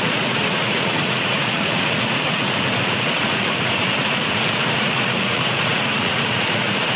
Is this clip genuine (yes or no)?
no